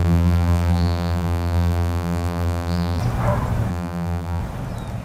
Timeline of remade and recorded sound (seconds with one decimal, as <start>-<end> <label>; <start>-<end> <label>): 0.0-3.0 remade; 3.0-3.7 recorded; 3.7-4.4 remade; 4.4-5.0 recorded